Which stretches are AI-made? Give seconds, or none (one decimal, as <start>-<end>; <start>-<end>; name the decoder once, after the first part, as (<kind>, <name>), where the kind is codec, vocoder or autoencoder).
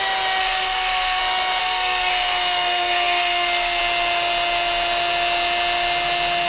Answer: 0.4-1.2 (codec, SNAC); 1.6-3.8